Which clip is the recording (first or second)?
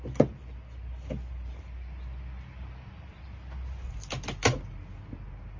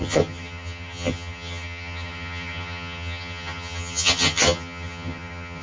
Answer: first